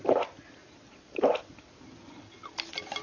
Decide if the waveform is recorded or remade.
recorded